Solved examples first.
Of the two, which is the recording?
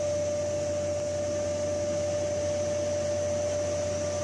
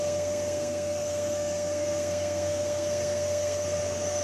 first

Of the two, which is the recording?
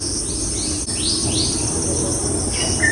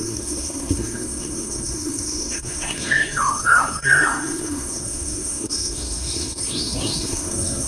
first